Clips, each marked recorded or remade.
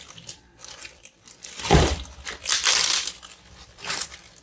remade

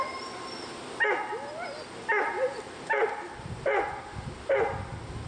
recorded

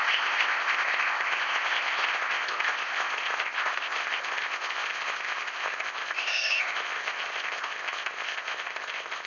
remade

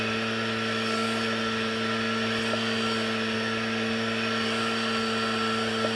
recorded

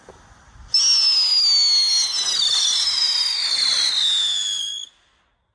recorded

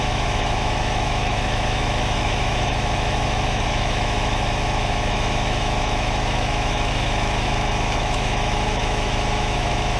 remade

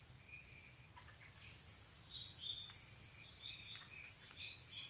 recorded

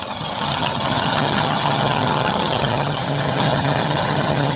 remade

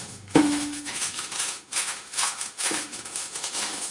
remade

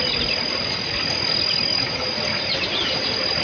recorded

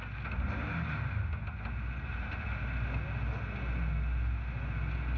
recorded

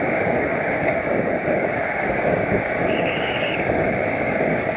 remade